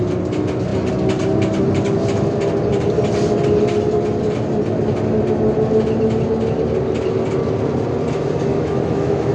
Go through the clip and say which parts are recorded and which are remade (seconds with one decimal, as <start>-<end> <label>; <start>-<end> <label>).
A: 0.0-8.5 recorded; 8.5-9.3 remade